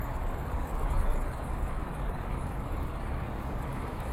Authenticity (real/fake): fake